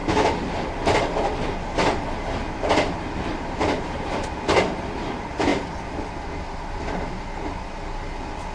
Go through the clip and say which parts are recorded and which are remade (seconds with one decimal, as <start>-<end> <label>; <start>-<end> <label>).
0.0-8.5 recorded